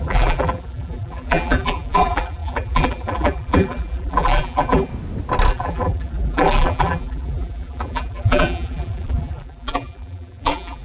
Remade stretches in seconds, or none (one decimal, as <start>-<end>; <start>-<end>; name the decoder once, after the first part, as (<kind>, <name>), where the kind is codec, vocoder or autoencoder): 0.0-4.9 (vocoder, BigVGAN v2); 5.5-10.8